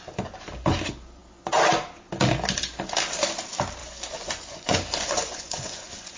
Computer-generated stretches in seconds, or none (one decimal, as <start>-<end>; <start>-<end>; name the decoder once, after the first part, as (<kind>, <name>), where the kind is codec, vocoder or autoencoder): 3.8-6.2 (vocoder, Vocos)